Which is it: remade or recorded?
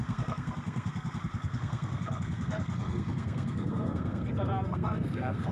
remade